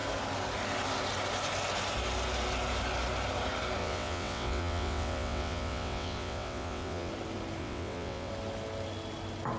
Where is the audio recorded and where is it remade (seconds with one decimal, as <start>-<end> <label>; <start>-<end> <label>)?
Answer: 0.0-3.8 recorded; 3.8-7.1 remade; 7.1-7.6 recorded; 7.6-8.3 remade; 8.3-9.6 recorded